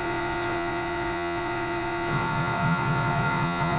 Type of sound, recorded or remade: remade